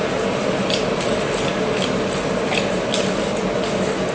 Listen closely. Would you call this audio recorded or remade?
recorded